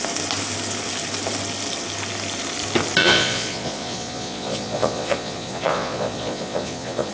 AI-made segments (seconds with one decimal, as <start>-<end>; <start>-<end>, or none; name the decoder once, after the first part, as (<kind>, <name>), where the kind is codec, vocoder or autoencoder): 3.0-7.1 (vocoder, Vocos)

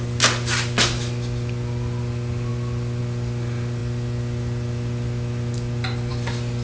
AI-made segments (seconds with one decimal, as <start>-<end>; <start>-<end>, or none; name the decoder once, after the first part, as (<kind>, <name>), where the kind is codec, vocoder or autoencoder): none

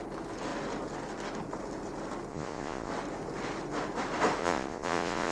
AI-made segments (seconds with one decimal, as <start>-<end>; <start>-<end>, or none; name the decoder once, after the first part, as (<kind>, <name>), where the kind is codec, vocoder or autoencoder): 2.3-2.9 (vocoder, Vocos); 4.4-5.3

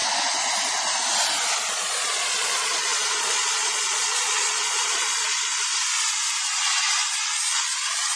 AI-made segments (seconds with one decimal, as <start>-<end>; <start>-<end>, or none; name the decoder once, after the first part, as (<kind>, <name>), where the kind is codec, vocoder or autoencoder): 1.7-5.5 (vocoder, Vocos); 6.4-8.2

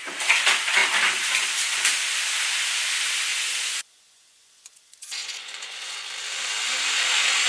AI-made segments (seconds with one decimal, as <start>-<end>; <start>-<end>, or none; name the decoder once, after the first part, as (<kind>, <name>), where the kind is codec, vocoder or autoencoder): 3.3-6.1 (vocoder, Vocos)

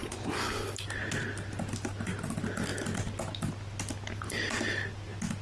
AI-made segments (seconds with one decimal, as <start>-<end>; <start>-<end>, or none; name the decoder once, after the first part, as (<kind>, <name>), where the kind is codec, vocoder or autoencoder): 0.0-0.5 (vocoder, Vocos)

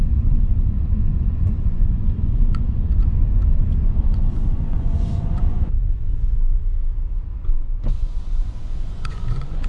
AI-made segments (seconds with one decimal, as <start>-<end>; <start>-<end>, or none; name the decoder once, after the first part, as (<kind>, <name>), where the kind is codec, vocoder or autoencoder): 0.0-6.6 (vocoder, Vocos); 7.4-9.7

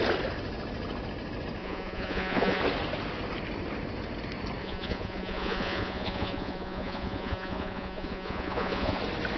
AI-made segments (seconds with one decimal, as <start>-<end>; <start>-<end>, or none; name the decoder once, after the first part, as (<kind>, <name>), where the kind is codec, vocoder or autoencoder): 1.6-2.6 (vocoder, Vocos); 4.6-9.0